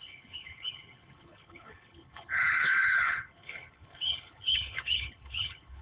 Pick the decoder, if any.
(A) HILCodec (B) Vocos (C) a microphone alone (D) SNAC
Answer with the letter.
A